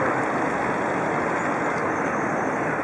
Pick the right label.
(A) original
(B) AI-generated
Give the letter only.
A